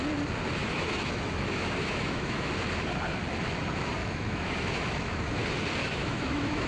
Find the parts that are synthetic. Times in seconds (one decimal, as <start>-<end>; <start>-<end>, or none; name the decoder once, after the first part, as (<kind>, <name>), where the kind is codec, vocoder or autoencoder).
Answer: 0.6-2.5 (autoencoder, DAC-VAE); 4.0-5.3; 5.8-6.7